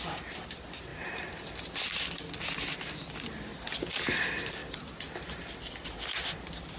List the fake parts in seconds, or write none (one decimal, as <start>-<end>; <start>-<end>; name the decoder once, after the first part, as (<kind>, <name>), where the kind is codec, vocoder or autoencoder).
none